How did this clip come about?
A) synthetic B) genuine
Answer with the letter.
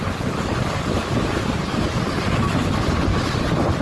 B